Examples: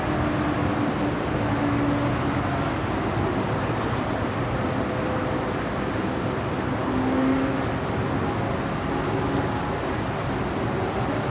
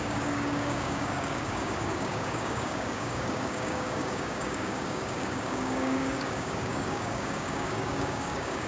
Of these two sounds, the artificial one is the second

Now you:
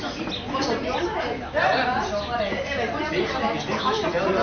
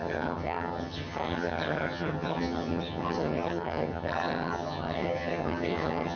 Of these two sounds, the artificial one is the second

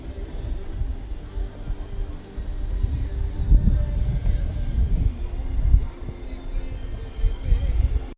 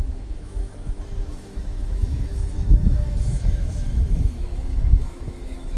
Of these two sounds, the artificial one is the second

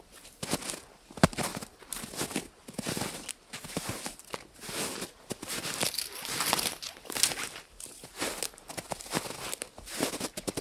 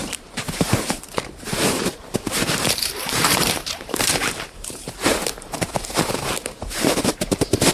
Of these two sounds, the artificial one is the second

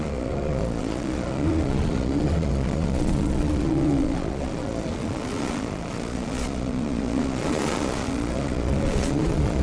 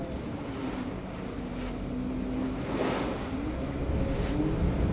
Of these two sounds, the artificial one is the first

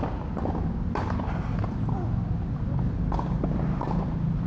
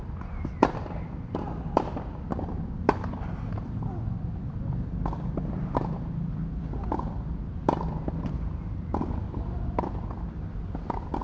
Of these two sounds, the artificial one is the second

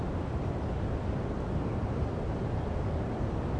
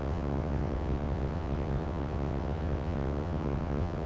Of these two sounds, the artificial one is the second